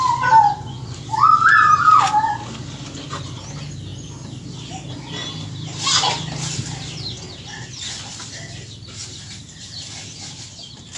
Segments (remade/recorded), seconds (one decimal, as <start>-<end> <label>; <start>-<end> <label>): 0.0-11.0 recorded

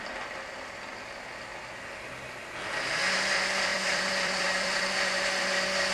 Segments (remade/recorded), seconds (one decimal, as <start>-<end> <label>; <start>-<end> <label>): 0.0-3.7 recorded; 3.7-4.8 remade; 4.8-5.9 recorded

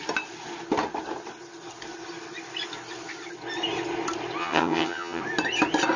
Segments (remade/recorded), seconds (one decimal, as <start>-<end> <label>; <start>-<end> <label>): 0.0-4.4 recorded; 4.4-5.2 remade; 5.2-6.0 recorded